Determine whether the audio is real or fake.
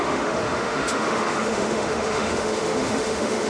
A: fake